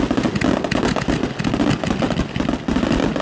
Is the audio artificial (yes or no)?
no